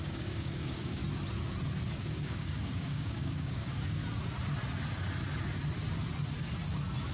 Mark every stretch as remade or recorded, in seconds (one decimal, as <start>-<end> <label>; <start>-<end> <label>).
0.0-1.0 remade; 1.0-2.0 recorded; 2.0-4.0 remade; 4.0-7.1 recorded